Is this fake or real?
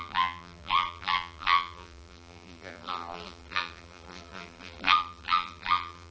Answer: fake